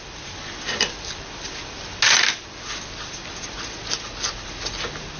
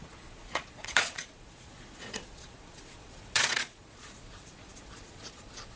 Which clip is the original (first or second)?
first